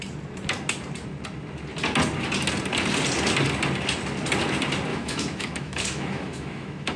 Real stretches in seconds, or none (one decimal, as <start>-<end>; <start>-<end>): 0.0-4.9

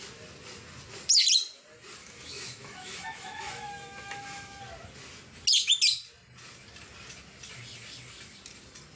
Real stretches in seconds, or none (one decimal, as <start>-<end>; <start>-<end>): 0.0-2.0; 4.6-9.0

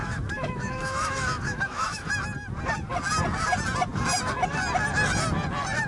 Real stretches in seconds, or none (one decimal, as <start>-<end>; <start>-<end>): 2.1-5.9